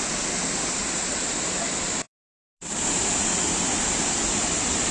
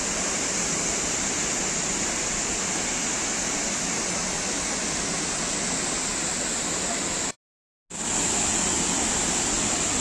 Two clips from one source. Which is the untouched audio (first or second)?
second